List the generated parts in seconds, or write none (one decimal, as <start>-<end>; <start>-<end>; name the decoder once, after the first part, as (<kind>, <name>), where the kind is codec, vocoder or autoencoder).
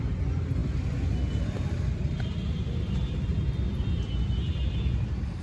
none